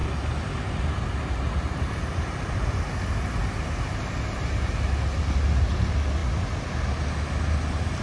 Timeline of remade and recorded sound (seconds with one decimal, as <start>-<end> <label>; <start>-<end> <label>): 0.0-3.4 recorded; 3.4-4.7 remade; 4.7-8.0 recorded